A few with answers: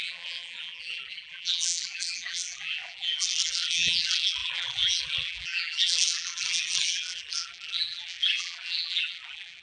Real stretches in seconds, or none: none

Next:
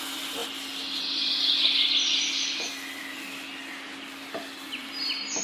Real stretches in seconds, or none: 0.0-5.4

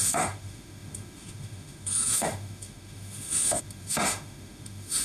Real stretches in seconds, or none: none